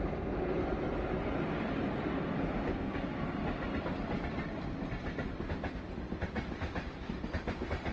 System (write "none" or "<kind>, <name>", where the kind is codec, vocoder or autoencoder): none